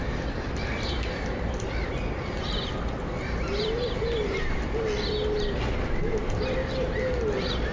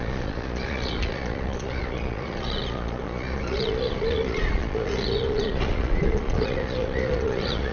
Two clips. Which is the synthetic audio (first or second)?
second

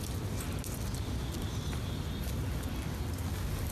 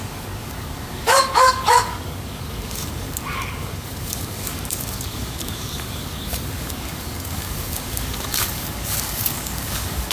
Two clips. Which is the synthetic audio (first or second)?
second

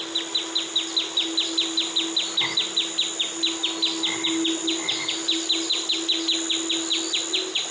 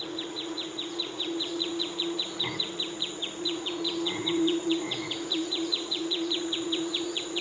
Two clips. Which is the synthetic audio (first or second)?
second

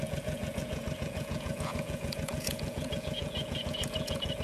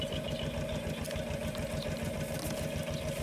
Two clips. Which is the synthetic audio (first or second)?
first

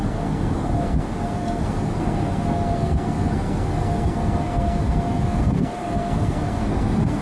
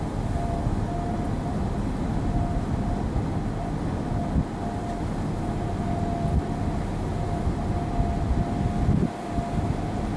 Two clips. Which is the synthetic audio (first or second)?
first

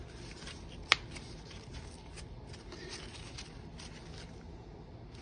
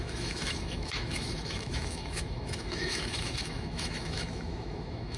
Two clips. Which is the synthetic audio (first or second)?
second